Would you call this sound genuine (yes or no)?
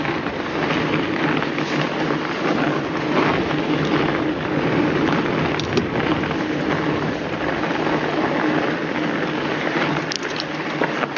yes